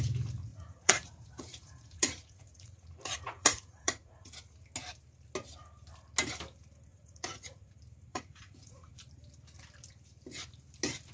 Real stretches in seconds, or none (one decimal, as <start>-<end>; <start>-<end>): 0.0-0.5; 4.3-6.9; 7.7-8.1; 8.9-11.1